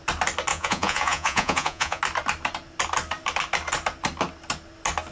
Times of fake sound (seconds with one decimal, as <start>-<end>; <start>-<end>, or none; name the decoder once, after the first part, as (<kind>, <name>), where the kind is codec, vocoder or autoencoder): 0.5-2.0 (vocoder, Vocos)

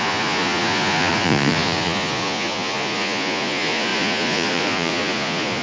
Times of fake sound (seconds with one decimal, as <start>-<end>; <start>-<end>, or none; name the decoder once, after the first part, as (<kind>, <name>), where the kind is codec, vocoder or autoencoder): 0.0-5.6 (vocoder, Vocos)

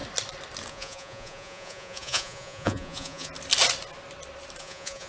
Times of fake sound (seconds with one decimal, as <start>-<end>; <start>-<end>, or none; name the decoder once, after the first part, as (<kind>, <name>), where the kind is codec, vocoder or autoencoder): 0.7-3.3 (vocoder, Vocos); 4.6-5.1

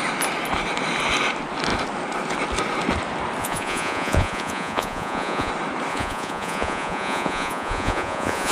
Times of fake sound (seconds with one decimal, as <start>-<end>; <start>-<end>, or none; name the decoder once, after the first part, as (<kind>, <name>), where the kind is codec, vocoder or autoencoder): 3.4-5.5 (vocoder, Vocos); 5.9-8.5

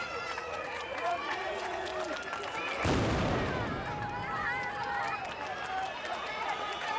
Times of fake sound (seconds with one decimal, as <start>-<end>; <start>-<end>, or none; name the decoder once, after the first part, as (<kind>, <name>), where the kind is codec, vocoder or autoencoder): 0.0-1.9 (vocoder, Vocos); 6.1-7.0

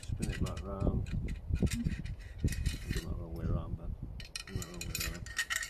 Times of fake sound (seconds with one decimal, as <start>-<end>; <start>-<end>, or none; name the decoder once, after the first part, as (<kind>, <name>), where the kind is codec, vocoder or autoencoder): 0.0-1.2 (vocoder, Vocos)

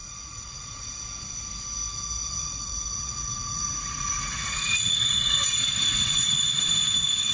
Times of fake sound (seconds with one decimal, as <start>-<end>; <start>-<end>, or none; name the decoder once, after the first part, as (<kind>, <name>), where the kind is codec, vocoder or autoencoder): 0.0-0.8 (vocoder, Vocos); 2.2-6.6

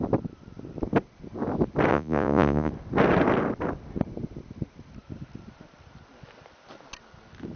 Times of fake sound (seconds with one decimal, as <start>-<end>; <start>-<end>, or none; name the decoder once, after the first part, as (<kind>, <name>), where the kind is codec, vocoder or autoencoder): 1.9-2.7 (vocoder, Vocos)